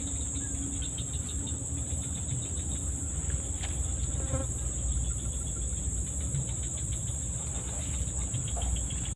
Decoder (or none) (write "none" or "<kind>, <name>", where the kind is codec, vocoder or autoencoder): none